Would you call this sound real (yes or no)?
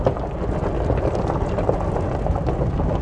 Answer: yes